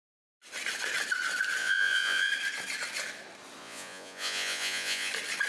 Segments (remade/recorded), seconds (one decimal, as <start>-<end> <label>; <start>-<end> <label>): 0.0-1.6 recorded; 1.6-2.3 remade; 2.3-3.6 recorded; 3.6-5.1 remade; 5.1-5.5 recorded